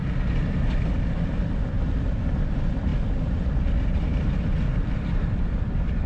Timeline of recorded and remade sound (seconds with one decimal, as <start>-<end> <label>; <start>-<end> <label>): 0.0-6.1 remade